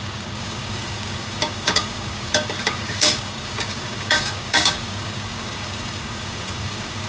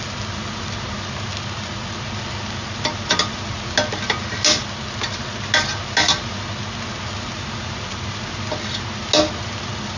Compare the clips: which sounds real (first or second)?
second